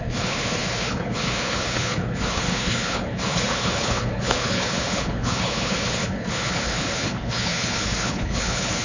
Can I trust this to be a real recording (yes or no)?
no